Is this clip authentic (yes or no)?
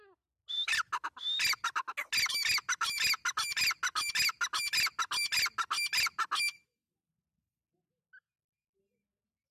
yes